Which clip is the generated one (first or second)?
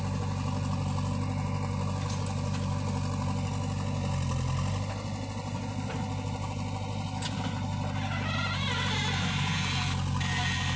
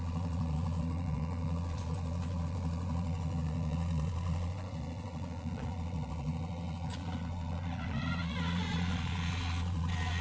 second